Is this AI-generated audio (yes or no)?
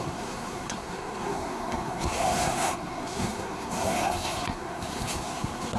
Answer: yes